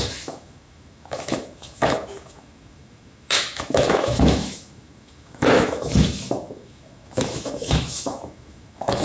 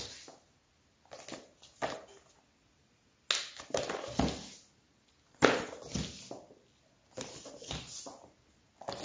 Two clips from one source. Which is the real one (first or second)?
second